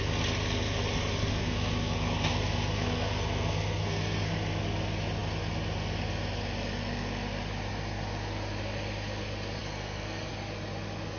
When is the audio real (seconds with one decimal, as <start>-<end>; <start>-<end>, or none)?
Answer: 0.0-1.3; 4.6-9.6; 10.3-11.2